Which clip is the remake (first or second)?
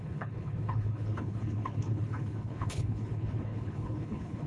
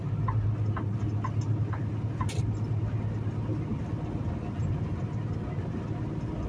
first